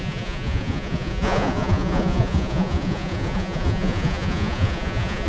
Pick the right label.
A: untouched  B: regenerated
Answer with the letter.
B